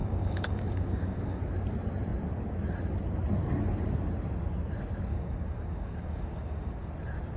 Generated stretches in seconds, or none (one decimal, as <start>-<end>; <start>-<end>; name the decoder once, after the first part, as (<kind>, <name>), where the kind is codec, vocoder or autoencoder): 0.0-1.4 (codec, DAC); 5.1-6.9